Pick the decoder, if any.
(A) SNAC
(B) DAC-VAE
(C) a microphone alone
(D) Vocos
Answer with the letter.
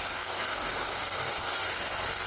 A